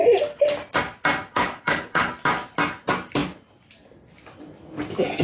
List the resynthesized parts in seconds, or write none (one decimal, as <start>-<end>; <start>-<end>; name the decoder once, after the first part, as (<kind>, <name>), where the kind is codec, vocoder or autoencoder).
1.3-2.1 (codec, HILCodec)